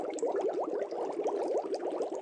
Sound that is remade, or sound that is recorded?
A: recorded